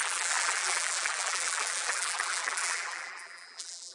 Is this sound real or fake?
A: fake